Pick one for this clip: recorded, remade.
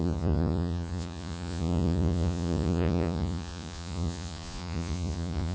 remade